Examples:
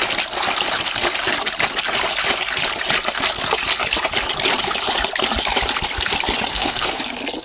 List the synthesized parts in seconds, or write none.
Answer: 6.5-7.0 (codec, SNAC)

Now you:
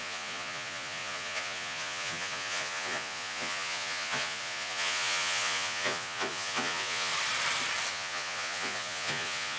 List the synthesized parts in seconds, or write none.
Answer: 0.0-7.1 (vocoder, Vocos); 7.9-9.6

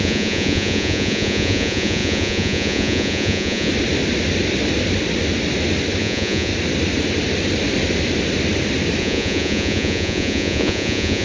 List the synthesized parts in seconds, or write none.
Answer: 0.0-3.7 (vocoder, Vocos); 6.0-6.5; 9.0-11.2

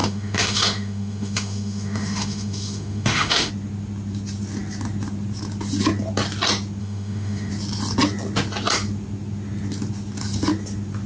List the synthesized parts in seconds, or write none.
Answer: 0.0-3.5 (autoencoder, DAC-VAE); 6.8-7.5

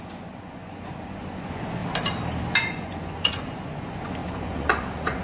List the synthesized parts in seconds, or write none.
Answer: 0.0-1.8 (vocoder, Vocos); 2.6-5.2

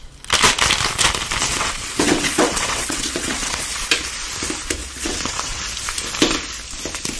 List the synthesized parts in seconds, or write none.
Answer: 1.5-3.6 (vocoder, WaveNeXt); 4.8-5.6